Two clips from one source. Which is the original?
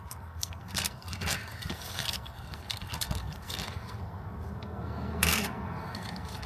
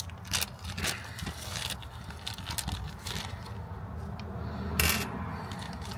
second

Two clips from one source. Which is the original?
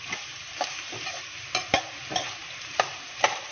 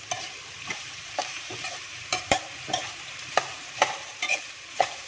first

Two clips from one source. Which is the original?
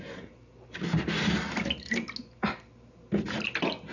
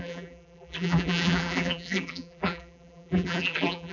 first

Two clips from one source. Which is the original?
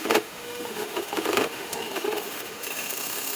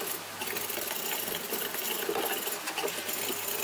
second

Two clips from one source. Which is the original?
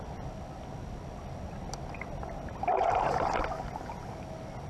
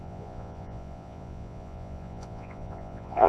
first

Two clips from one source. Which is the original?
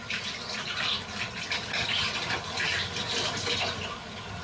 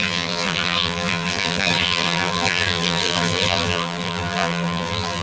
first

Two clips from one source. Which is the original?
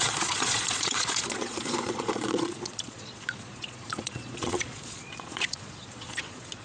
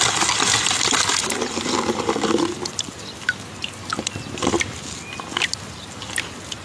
second